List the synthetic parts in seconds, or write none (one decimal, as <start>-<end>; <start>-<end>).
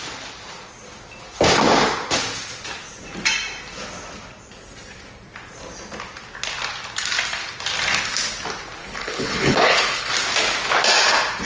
8.8-10.1